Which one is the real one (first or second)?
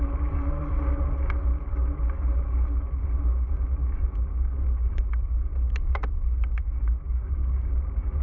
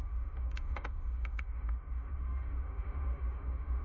first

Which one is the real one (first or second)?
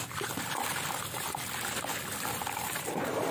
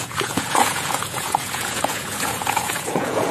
first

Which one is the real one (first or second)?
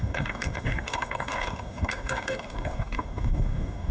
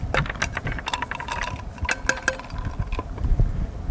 second